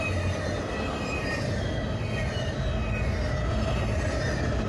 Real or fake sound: real